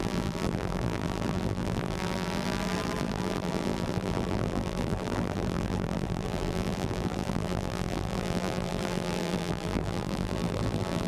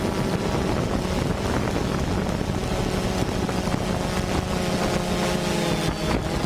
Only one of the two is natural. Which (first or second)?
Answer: second